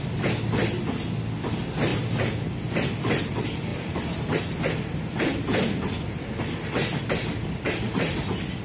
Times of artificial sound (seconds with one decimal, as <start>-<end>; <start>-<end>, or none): none